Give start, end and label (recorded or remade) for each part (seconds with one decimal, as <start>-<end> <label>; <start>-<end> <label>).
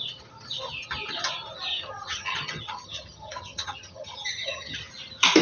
0.0-1.7 recorded; 1.7-4.9 remade; 4.9-5.4 recorded